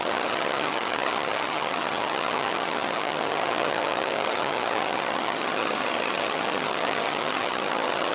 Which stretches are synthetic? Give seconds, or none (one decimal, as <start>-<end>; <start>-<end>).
0.0-8.1